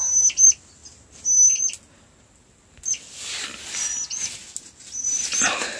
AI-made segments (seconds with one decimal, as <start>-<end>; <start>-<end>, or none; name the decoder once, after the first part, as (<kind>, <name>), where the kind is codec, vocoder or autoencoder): none